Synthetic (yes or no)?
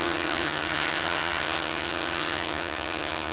yes